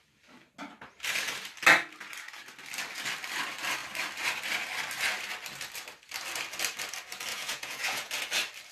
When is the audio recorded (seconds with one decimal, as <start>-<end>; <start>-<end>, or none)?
0.0-7.3; 8.1-8.7